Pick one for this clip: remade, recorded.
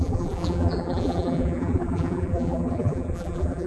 remade